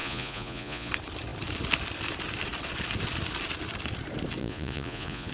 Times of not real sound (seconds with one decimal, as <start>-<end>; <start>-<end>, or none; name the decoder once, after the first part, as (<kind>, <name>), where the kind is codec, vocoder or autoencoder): 0.0-0.9 (vocoder, Vocos); 4.4-5.3